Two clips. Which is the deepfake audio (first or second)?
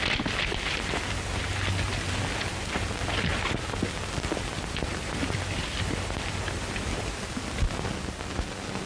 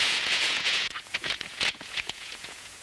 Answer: second